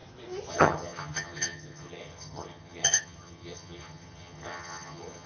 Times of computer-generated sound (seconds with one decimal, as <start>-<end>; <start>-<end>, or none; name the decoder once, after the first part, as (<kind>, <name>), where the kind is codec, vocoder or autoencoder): 0.5-5.3 (vocoder, HiFi-GAN)